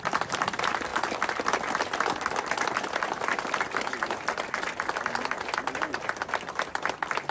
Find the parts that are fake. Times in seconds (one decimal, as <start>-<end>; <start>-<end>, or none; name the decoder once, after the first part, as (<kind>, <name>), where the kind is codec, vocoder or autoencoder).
none